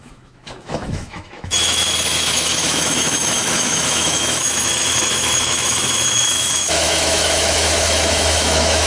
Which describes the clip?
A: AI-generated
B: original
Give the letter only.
A